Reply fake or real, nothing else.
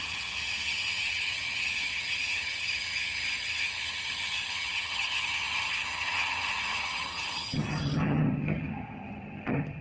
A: fake